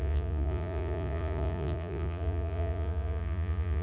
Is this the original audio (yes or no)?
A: no